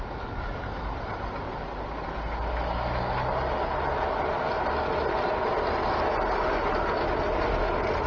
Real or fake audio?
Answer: real